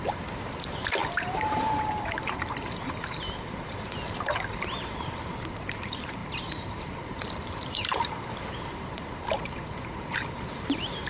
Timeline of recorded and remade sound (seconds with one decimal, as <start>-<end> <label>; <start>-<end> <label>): 0.0-11.1 remade